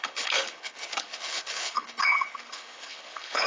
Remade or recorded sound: remade